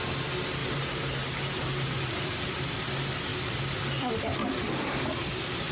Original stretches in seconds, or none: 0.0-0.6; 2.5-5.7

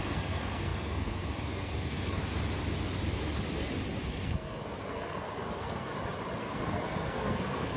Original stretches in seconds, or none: 2.2-4.0; 5.9-6.4

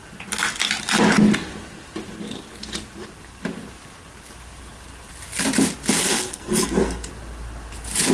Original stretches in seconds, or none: 0.0-6.1; 7.1-8.1

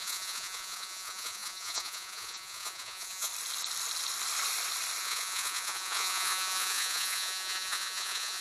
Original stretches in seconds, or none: 3.3-5.0

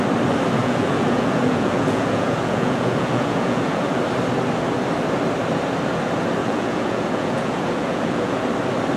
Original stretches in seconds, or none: 0.0-0.6; 4.0-6.4; 8.4-9.0

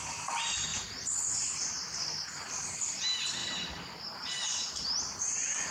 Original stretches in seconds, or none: 0.0-0.7; 2.6-3.4; 5.2-5.7

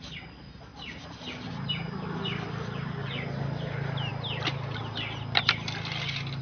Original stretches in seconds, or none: 0.0-6.4

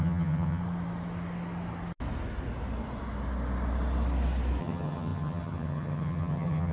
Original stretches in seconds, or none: 0.6-4.6